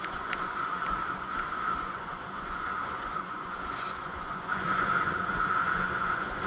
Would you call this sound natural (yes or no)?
no